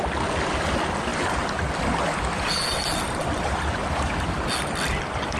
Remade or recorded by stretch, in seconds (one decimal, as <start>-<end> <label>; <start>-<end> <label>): 0.0-5.4 recorded